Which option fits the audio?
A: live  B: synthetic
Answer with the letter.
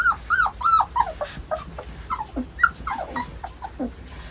A